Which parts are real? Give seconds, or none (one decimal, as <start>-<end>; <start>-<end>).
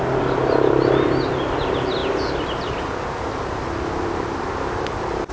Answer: 0.0-5.3